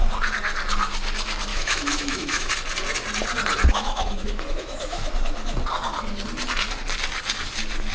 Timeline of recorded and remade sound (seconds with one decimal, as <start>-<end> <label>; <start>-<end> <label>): 0.0-1.5 recorded; 1.5-2.5 remade; 2.5-3.7 recorded; 3.7-5.1 remade; 5.1-7.9 recorded